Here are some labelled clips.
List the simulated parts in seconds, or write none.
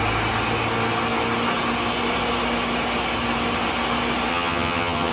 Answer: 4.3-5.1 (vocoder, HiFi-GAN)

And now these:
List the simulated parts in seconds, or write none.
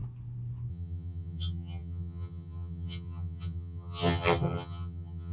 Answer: 0.7-5.3 (vocoder, HiFi-GAN)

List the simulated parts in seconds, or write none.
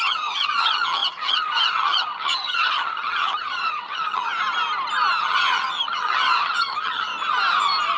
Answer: 0.0-4.3 (vocoder, HiFi-GAN); 5.2-7.1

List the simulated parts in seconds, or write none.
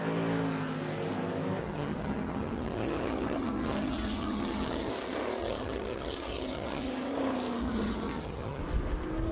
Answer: 1.6-4.9 (vocoder, HiFi-GAN); 5.4-6.9; 7.6-8.6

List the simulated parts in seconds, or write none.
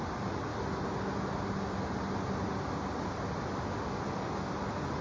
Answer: none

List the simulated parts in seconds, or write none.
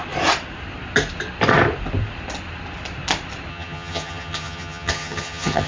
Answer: 3.5-5.7 (vocoder, HiFi-GAN)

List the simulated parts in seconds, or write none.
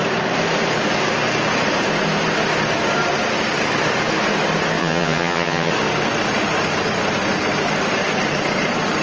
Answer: 4.8-5.7 (vocoder, HiFi-GAN)